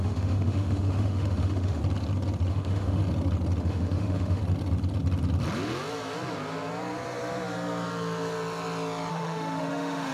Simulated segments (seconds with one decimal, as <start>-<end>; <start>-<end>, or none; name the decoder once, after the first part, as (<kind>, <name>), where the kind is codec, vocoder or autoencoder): 0.0-1.8 (autoencoder, DAC-VAE); 2.5-3.0; 3.6-4.4; 9.1-10.1